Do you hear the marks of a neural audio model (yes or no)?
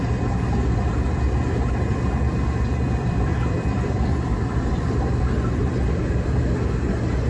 yes